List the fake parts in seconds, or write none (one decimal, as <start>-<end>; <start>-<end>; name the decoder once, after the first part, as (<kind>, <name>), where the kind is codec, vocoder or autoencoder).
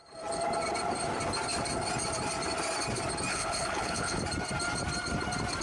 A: 3.3-4.2 (codec, HILCodec)